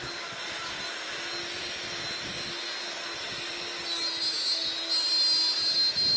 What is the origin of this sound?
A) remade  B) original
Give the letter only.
B